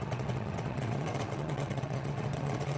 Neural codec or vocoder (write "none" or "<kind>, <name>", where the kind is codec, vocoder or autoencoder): vocoder, WaveNeXt